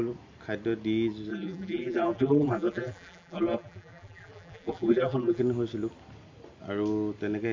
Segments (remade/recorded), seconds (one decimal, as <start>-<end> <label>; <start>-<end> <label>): 0.0-1.3 recorded; 1.3-5.4 remade; 5.4-7.5 recorded